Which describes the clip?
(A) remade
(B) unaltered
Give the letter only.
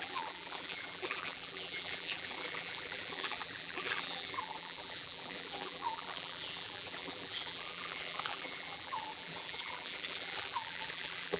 A